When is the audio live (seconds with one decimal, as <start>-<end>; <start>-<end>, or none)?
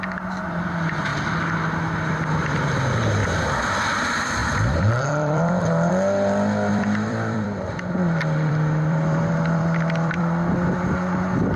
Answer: 0.0-3.2; 3.7-4.4; 5.9-6.7; 10.2-11.6